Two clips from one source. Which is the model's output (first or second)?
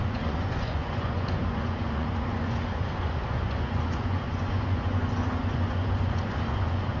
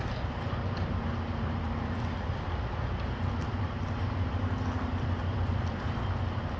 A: first